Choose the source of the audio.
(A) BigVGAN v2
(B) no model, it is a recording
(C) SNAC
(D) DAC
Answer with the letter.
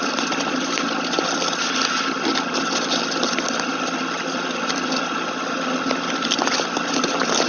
B